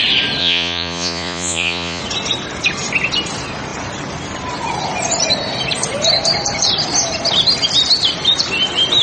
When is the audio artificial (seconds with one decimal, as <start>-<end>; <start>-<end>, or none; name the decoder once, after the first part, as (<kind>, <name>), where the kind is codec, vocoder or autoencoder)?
0.4-2.0 (vocoder, Vocos)